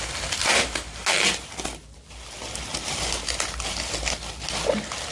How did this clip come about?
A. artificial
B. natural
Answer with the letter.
B